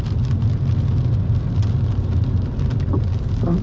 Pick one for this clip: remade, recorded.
recorded